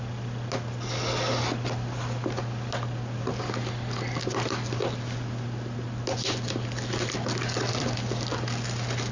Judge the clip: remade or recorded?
recorded